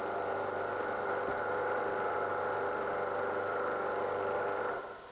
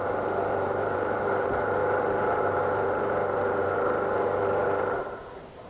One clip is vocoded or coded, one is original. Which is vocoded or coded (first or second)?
second